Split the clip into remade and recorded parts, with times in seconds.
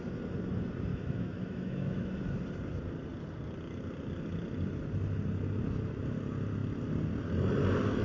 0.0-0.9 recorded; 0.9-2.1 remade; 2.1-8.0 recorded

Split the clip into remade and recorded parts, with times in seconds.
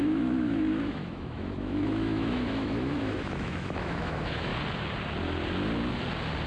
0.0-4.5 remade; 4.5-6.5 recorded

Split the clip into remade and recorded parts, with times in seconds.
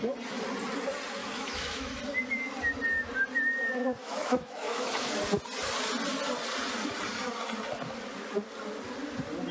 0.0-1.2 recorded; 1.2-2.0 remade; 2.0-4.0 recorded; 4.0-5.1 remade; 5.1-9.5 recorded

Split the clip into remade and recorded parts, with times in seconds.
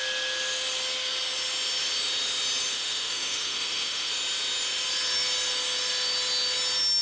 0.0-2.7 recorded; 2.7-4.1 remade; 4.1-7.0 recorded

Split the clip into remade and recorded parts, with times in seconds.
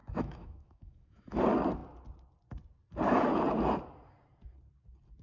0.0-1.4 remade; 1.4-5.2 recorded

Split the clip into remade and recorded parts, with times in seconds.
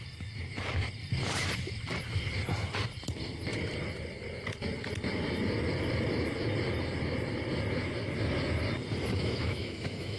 0.0-9.1 recorded; 9.1-10.2 remade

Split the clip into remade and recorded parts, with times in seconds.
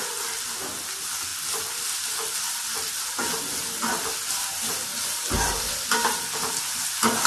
0.0-7.3 recorded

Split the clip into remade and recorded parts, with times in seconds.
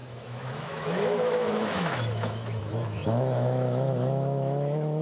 0.0-5.0 remade